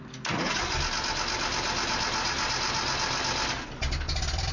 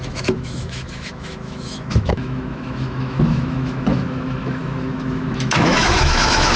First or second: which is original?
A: first